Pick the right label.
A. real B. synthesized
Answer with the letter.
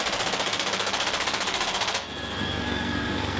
B